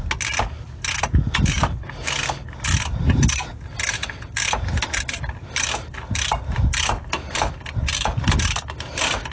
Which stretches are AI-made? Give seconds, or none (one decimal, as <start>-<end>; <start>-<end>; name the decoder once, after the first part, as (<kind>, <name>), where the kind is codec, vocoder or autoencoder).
none